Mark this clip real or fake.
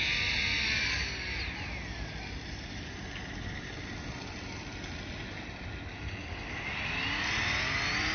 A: real